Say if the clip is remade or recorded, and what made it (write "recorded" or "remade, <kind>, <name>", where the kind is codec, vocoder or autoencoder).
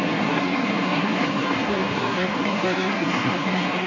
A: remade, codec, SNAC